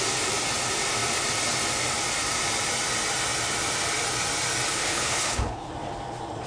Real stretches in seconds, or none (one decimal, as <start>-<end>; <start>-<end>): 0.0-4.7; 5.7-6.5